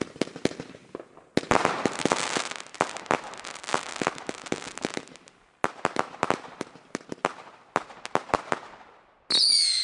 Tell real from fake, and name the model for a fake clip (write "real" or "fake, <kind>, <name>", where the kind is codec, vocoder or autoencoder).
real